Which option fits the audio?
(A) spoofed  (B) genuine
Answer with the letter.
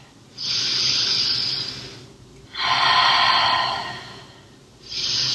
B